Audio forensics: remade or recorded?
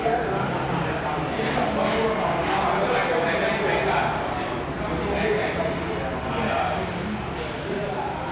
recorded